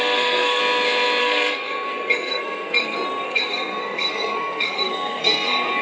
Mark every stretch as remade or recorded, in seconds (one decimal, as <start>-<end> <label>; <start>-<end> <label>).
0.0-0.6 remade; 0.6-1.2 recorded; 1.2-5.8 remade

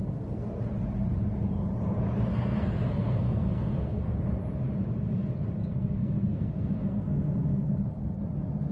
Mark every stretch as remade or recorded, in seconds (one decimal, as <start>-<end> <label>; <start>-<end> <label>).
0.0-0.6 remade; 0.6-2.3 recorded; 2.3-4.2 remade; 4.2-5.6 recorded; 5.6-7.8 remade; 7.8-8.7 recorded

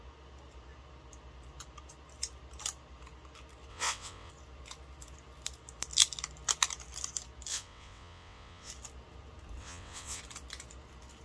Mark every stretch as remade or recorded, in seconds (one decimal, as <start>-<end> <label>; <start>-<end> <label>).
0.0-3.7 recorded; 3.7-4.3 remade; 4.3-7.5 recorded; 7.5-8.7 remade; 8.7-9.6 recorded; 9.6-10.2 remade; 10.2-11.2 recorded

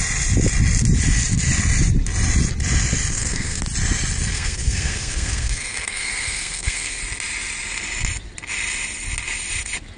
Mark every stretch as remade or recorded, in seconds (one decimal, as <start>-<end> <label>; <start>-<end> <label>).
0.0-3.1 recorded; 3.1-3.6 remade; 3.6-4.3 recorded; 4.3-7.0 remade; 7.0-10.0 recorded